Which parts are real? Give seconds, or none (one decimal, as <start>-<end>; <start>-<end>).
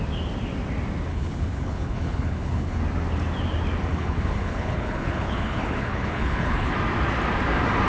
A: 0.0-1.1; 2.8-3.9; 6.7-7.9